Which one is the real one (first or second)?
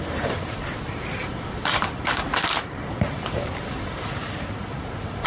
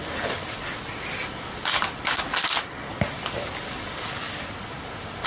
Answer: second